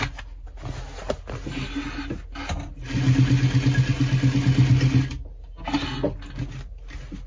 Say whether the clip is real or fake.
real